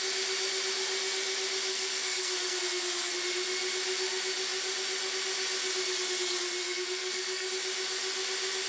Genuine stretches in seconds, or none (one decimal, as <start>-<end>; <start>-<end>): 0.0-1.7; 3.1-6.6; 7.5-8.7